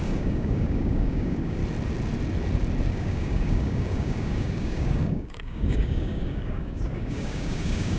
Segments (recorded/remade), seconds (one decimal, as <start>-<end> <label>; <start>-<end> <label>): 0.0-1.6 remade; 1.6-2.9 recorded; 2.9-8.0 remade